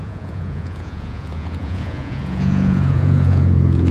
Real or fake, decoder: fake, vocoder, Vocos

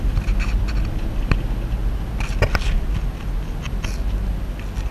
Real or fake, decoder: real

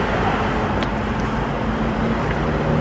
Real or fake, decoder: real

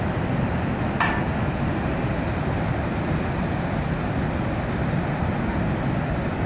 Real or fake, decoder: real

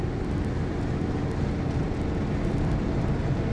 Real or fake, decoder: real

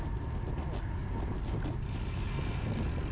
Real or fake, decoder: real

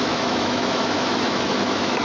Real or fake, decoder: fake, autoencoder, DAC-VAE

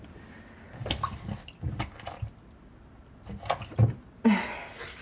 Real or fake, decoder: real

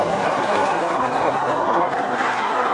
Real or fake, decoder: fake, codec, SNAC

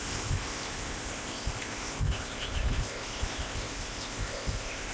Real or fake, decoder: fake, codec, ZipCodec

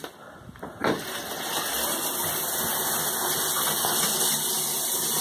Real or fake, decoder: real